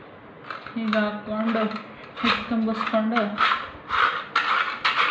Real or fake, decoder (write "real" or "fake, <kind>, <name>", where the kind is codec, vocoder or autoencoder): real